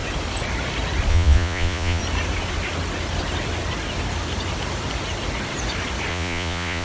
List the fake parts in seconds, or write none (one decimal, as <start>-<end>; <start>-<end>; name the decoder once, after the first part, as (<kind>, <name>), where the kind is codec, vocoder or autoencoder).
1.1-2.0 (vocoder, Vocos); 6.1-6.8